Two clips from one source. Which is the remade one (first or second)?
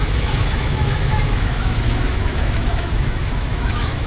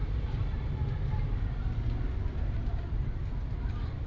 first